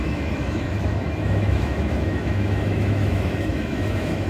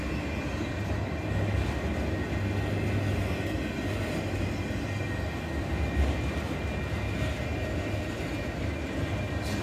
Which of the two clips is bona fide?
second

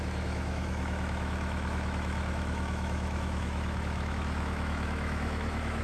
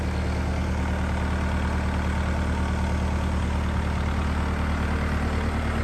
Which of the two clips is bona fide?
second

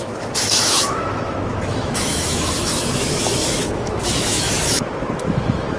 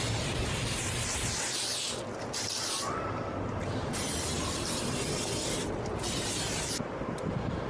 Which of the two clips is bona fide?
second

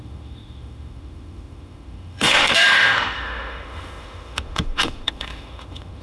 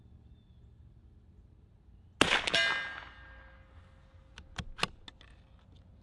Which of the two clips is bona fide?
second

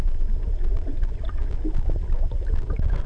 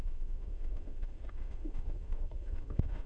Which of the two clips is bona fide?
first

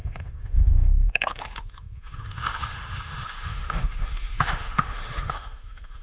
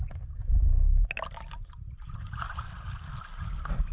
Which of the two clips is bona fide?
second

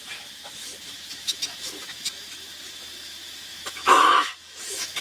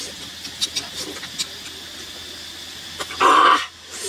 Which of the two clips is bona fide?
second